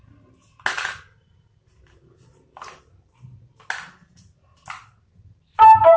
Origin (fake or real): real